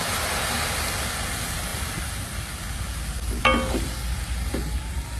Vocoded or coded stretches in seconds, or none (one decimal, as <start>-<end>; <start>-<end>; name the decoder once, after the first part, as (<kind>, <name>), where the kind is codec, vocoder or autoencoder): none

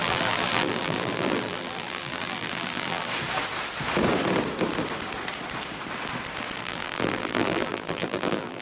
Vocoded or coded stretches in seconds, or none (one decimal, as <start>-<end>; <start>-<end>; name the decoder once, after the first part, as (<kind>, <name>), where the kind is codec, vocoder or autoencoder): 0.0-3.1 (vocoder, BigVGAN v2); 6.6-8.6

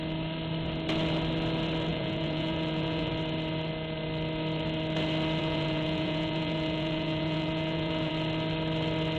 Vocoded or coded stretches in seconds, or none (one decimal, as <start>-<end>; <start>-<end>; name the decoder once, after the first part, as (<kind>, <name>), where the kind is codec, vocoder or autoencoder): 1.9-3.1 (vocoder, Vocos); 5.4-8.1

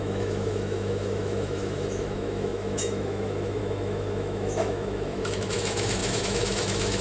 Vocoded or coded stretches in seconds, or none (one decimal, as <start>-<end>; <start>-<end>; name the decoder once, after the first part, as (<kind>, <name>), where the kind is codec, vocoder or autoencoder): 0.0-7.0 (autoencoder, DAC-VAE)

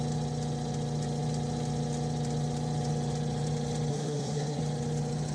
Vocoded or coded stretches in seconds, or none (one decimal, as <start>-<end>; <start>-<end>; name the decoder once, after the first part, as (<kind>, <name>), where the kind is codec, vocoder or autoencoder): 3.9-4.6 (codec, SNAC)

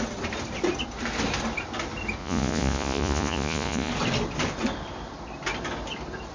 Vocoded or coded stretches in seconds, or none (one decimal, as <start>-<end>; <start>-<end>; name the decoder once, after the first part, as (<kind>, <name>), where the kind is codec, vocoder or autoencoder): 2.2-3.9 (vocoder, Vocos)